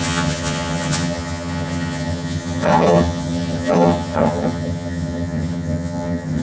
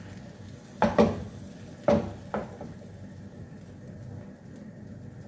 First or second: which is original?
second